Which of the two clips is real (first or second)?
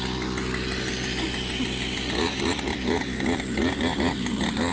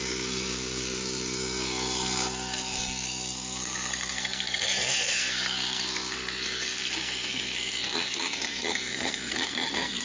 first